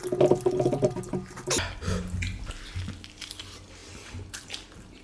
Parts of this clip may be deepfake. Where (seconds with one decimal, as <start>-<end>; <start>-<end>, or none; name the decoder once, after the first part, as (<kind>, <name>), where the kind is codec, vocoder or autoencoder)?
none